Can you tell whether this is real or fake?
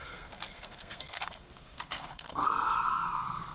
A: fake